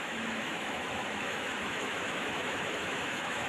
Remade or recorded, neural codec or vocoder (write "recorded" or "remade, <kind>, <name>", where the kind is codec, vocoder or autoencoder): remade, autoencoder, DAC-VAE